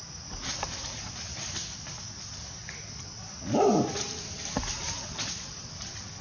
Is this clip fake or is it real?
real